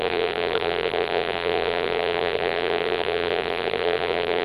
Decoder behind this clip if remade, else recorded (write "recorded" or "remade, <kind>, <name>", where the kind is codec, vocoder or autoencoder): remade, vocoder, BigVGAN v2